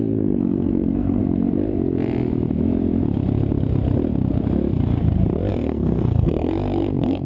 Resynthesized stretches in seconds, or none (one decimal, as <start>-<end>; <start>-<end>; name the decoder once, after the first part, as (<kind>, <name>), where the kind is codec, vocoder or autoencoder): 0.0-1.2 (codec, SNAC); 5.5-7.2